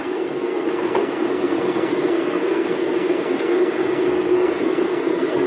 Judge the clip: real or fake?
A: fake